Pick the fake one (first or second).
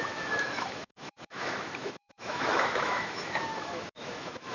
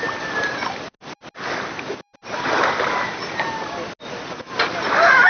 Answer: first